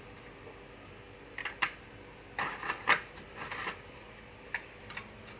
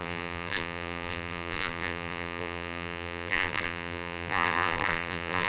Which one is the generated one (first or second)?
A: second